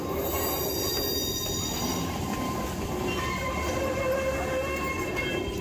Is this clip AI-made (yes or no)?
no